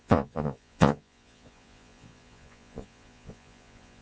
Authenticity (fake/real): fake